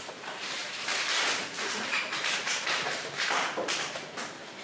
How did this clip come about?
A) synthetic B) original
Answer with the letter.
A